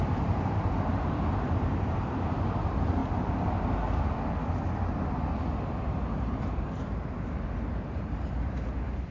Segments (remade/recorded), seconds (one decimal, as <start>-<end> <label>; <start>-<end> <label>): 0.0-3.0 remade; 3.0-5.8 recorded; 5.8-9.1 remade